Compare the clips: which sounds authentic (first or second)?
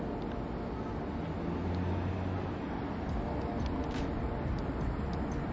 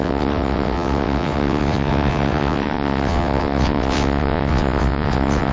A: first